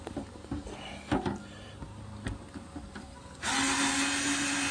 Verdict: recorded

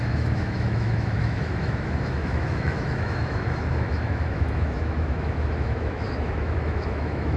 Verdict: remade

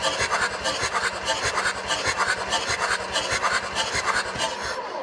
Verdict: recorded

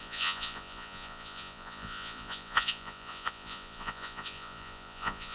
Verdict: remade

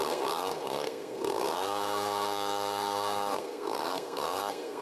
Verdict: remade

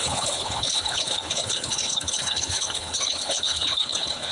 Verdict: remade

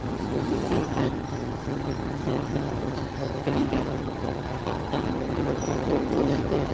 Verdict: remade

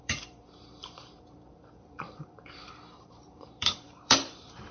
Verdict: remade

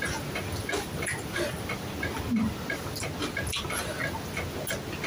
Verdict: recorded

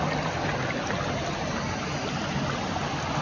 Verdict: recorded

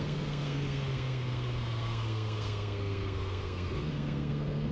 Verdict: remade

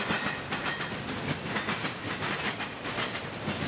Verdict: recorded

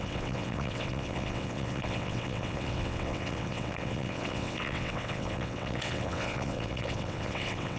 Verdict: remade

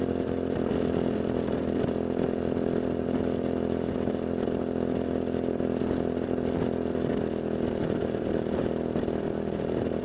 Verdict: recorded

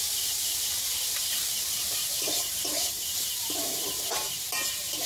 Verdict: remade